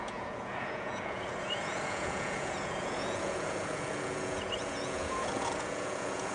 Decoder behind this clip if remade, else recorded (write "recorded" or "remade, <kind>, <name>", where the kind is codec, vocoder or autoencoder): remade, vocoder, Vocos